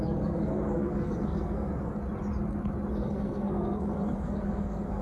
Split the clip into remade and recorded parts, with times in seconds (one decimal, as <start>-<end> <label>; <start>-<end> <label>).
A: 0.0-1.7 remade; 1.7-2.9 recorded; 2.9-5.0 remade